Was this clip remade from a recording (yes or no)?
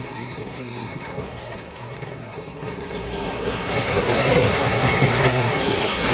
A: yes